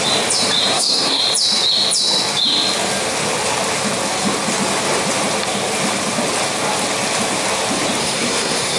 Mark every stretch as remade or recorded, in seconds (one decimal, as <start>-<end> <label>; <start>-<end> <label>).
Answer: 0.0-0.7 recorded; 0.7-1.2 remade; 1.2-8.0 recorded; 8.0-8.8 remade